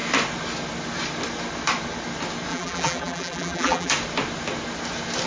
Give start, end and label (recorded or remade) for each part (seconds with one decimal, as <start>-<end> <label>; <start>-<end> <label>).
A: 0.0-2.5 recorded; 2.5-3.9 remade; 3.9-5.3 recorded